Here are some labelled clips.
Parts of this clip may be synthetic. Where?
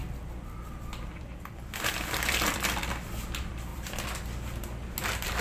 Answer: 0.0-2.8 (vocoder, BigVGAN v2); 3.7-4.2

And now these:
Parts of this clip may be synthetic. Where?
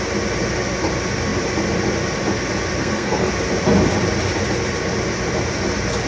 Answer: 2.8-3.3 (codec, SNAC)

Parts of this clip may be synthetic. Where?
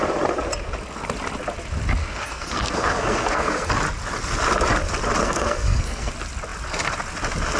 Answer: 2.0-3.7 (codec, SNAC); 5.2-6.1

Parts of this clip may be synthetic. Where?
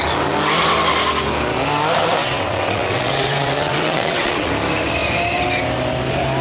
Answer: 2.2-4.5 (vocoder, WaveNeXt)